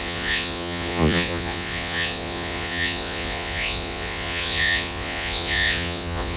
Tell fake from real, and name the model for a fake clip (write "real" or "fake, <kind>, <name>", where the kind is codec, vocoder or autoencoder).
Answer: fake, vocoder, Vocos